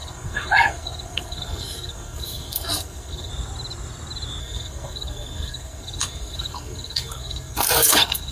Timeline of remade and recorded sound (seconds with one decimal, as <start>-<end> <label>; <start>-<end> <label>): 0.0-3.3 remade; 3.3-4.4 recorded; 4.4-8.3 remade